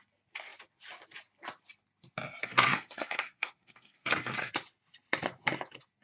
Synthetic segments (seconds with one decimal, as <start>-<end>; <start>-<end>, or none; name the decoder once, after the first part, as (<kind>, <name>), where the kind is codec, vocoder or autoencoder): 2.4-4.5 (codec, SNAC)